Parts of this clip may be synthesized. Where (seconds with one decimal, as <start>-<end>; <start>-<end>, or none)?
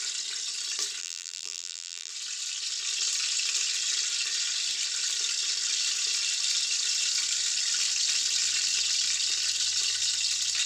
1.0-2.1